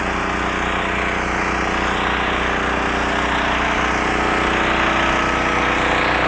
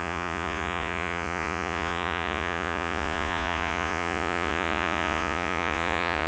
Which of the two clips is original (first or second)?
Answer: first